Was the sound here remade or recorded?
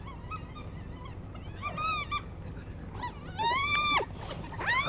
recorded